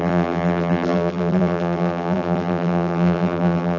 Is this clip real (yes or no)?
no